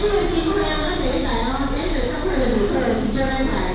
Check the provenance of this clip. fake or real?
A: real